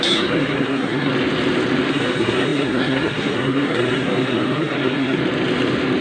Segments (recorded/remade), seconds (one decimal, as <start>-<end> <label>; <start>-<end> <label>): 0.0-1.1 remade; 1.1-1.9 recorded; 1.9-5.2 remade; 5.2-6.0 recorded